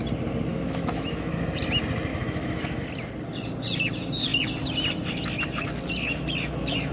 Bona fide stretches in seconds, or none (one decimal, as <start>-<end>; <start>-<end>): 0.0-0.5; 1.3-2.1; 2.8-6.9